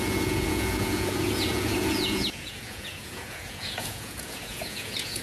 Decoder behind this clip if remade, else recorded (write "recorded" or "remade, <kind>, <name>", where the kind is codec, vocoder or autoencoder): remade, vocoder, Vocos